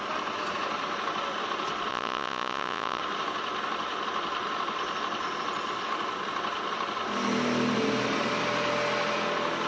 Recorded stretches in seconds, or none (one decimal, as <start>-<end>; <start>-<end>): 0.0-1.9; 3.0-9.7